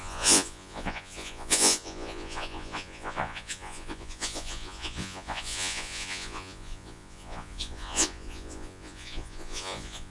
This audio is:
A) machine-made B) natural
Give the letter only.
A